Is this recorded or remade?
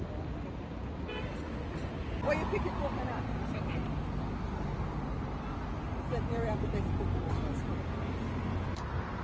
recorded